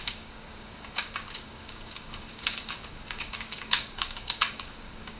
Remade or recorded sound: remade